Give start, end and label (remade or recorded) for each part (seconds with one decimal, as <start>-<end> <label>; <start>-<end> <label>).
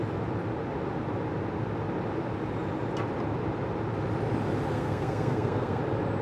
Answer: 0.0-4.7 recorded; 4.7-5.8 remade; 5.8-6.2 recorded